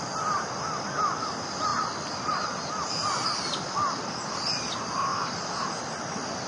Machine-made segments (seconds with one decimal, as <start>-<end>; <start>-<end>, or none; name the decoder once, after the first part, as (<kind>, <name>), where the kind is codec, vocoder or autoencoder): 5.1-5.8 (vocoder, BigVGAN v2)